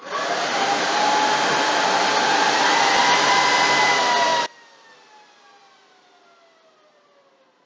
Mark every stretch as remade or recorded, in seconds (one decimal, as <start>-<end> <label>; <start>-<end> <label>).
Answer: 0.0-7.7 recorded